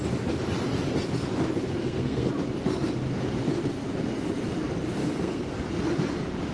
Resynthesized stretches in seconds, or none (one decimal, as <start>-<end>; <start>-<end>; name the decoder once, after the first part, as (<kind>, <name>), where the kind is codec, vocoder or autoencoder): 1.8-2.3 (codec, SNAC); 5.0-5.6